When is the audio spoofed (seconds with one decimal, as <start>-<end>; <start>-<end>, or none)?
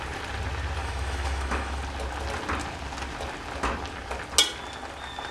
0.8-1.8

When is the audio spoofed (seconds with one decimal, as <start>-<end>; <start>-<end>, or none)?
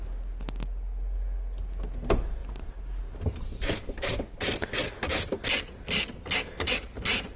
none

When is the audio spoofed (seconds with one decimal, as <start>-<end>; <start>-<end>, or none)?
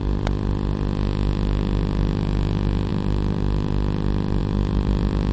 none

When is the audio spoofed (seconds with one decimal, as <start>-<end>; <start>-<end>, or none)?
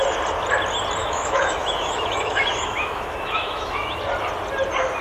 1.0-4.0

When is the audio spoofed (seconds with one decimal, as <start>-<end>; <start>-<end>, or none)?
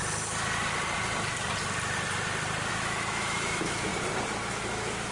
2.7-3.9; 4.5-5.1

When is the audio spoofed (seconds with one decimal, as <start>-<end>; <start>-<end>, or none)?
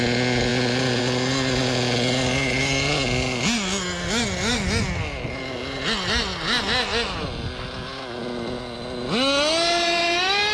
none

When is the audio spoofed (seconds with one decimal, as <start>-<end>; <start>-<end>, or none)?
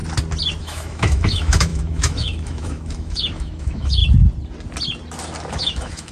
0.6-4.0; 5.5-6.1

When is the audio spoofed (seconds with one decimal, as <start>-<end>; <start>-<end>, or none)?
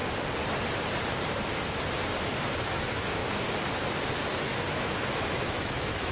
2.6-3.2; 4.7-6.1